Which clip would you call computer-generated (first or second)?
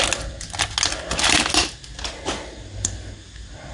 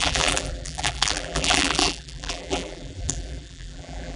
second